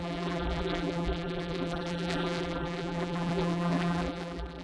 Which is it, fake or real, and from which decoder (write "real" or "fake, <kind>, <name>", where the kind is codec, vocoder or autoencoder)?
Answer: fake, vocoder, BigVGAN v2